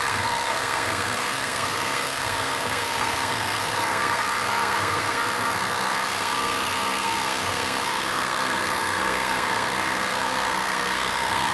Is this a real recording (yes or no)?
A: no